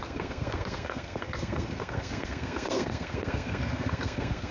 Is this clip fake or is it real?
fake